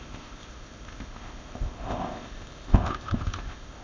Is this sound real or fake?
fake